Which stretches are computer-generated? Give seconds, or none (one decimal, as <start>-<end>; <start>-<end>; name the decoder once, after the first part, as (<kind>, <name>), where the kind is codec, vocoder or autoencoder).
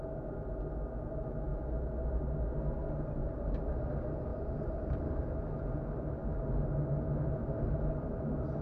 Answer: 3.2-3.9 (vocoder, BigVGAN v2); 4.3-5.3